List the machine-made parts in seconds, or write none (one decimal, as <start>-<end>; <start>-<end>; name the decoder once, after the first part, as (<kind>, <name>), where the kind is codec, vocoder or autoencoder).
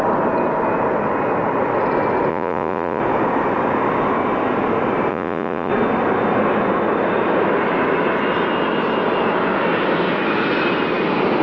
2.3-3.0 (vocoder, Vocos); 5.1-5.7